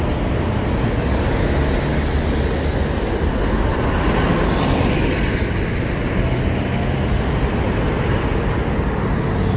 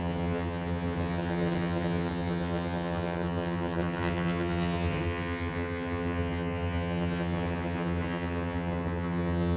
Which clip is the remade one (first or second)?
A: second